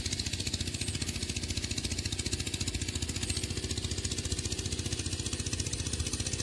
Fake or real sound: real